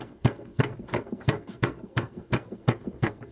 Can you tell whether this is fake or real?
fake